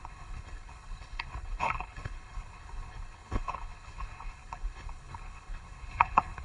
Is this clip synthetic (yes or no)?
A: yes